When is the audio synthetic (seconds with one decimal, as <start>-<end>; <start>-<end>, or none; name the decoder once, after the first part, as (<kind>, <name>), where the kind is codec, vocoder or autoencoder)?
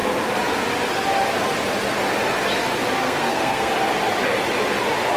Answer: 3.0-3.7 (codec, SNAC)